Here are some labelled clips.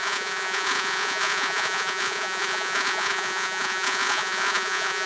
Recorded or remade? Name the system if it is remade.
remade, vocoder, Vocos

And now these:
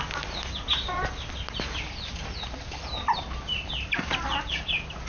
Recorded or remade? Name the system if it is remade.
recorded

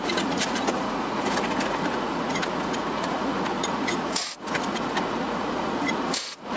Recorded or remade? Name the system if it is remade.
remade, vocoder, Vocos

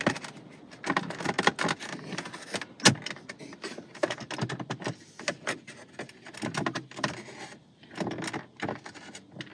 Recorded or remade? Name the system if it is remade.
recorded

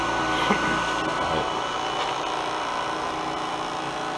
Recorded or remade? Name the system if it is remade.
recorded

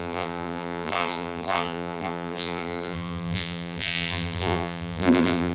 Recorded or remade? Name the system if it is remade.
remade, vocoder, BigVGAN v2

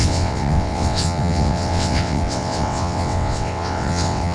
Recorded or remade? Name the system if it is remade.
remade, vocoder, WaveNeXt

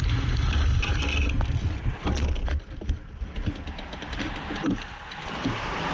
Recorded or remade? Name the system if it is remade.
recorded